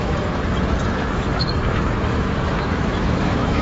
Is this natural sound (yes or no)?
no